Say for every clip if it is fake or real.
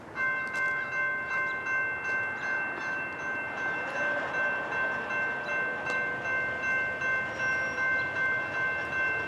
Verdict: real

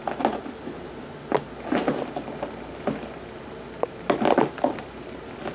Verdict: real